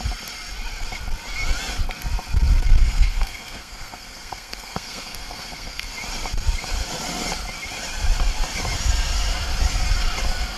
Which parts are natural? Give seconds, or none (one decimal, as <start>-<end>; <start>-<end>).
0.0-2.8; 5.9-10.6